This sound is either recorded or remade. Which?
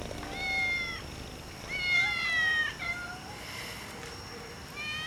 recorded